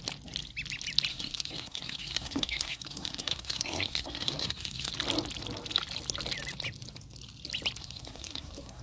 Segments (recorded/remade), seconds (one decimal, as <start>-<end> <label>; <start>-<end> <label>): 0.0-1.1 recorded; 1.1-4.9 remade; 4.9-7.8 recorded; 7.8-8.8 remade